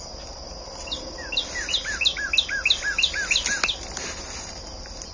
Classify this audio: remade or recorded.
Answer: recorded